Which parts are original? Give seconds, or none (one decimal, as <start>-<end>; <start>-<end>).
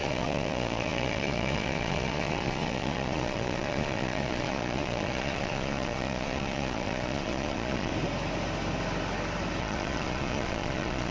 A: 7.9-9.6